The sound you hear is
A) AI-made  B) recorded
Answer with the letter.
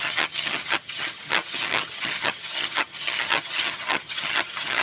A